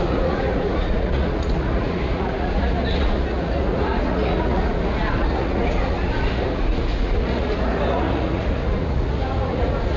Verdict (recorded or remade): remade